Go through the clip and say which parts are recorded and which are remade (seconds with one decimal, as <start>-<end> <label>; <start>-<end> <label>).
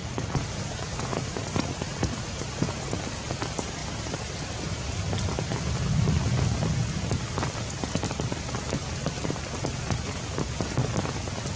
0.0-3.0 remade; 3.0-9.7 recorded; 9.7-10.2 remade; 10.2-11.6 recorded